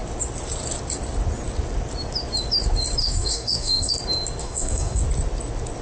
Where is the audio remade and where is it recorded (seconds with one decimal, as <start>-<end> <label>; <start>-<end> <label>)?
0.0-3.0 recorded; 3.0-3.9 remade; 3.9-4.4 recorded; 4.4-5.0 remade; 5.0-5.8 recorded